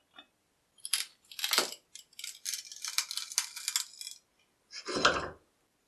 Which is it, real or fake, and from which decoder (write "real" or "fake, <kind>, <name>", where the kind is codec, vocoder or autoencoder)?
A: real